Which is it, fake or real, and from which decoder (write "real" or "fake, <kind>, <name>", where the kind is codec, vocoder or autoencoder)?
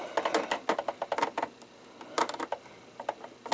real